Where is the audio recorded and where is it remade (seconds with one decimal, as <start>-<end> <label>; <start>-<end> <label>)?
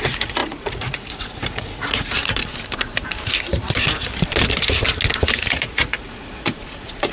0.0-2.4 remade; 2.4-5.5 recorded; 5.5-7.1 remade